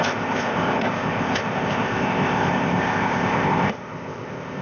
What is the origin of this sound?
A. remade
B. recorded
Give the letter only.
A